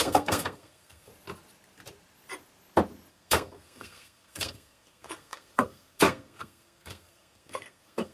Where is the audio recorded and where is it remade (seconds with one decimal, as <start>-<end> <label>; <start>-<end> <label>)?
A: 0.0-1.1 remade; 1.1-3.1 recorded; 3.1-8.1 remade